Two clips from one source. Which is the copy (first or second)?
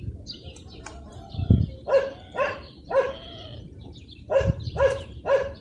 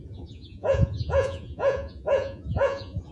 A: second